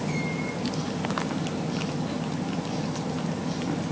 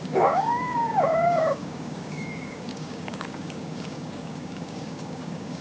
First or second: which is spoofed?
second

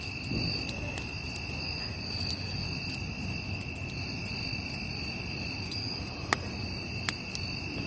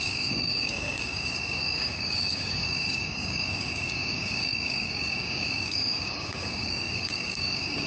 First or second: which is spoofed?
second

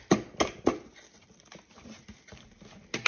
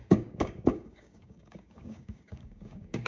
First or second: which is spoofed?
second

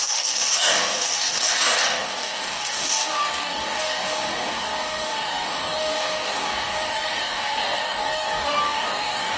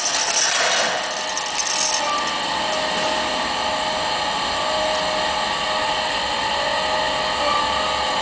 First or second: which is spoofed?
first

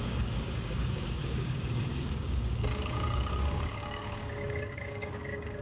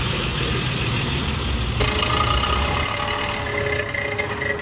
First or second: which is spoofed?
first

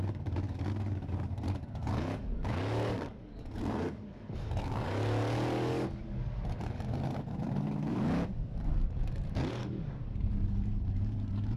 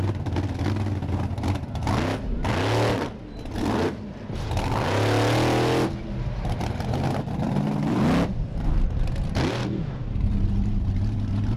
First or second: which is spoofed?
first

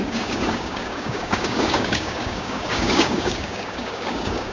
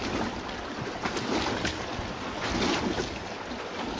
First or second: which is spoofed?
first